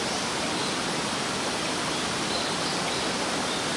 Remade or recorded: recorded